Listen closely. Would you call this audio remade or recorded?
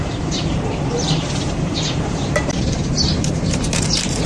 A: remade